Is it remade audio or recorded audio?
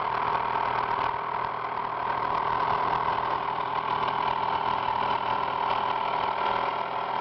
recorded